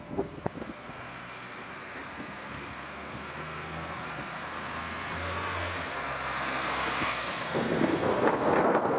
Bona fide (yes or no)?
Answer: no